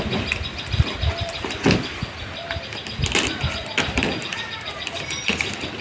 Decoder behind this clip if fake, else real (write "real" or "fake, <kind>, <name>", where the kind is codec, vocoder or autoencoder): real